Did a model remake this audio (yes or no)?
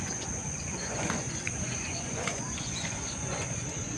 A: yes